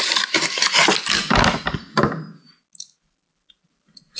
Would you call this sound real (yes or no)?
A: yes